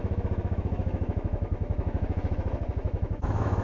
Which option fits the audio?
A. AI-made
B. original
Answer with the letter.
A